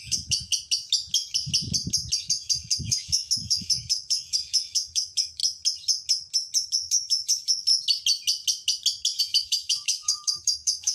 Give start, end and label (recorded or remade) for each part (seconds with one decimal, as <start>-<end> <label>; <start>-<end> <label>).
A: 0.0-0.5 remade; 0.5-2.2 recorded; 2.2-5.4 remade; 5.4-6.7 recorded; 6.7-7.7 remade; 7.7-9.2 recorded; 9.2-10.9 remade